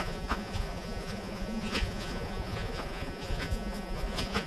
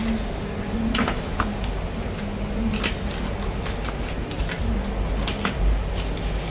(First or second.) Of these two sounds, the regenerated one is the first